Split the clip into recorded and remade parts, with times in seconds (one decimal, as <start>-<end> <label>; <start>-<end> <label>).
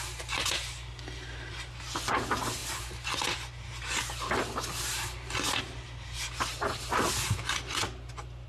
0.0-8.5 recorded